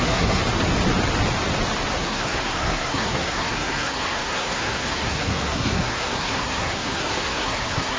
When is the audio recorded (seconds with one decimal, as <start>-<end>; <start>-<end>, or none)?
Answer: 0.4-2.0